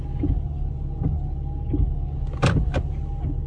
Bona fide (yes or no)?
yes